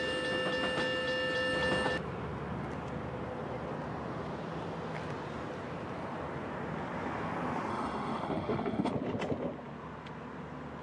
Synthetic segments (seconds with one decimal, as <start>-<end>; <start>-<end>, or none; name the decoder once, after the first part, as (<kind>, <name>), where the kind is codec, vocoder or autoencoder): 7.7-8.9 (autoencoder, DAC-VAE)